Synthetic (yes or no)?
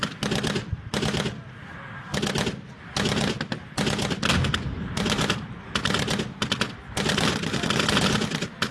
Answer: no